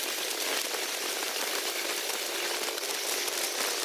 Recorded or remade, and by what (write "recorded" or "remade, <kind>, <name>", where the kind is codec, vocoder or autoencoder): recorded